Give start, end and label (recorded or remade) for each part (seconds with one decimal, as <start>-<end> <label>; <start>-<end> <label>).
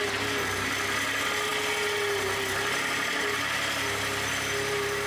0.0-5.1 recorded